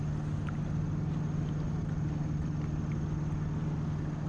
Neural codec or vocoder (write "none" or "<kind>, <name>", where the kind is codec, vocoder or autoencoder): none